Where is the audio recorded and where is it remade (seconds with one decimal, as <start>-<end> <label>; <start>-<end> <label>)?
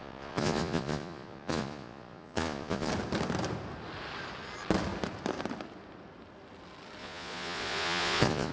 0.0-2.9 remade; 2.9-7.0 recorded; 7.0-8.5 remade